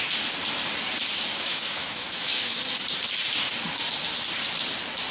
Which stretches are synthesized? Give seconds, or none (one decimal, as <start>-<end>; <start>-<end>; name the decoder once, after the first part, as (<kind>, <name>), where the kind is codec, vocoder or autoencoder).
1.3-2.6 (autoencoder, DAC-VAE)